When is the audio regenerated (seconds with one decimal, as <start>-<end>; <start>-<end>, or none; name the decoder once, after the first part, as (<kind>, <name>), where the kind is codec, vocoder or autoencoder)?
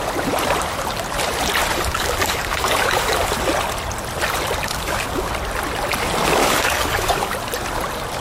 1.6-3.3 (codec, DAC); 4.7-5.3; 6.4-7.3